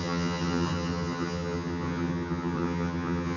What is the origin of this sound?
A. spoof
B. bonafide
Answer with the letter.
A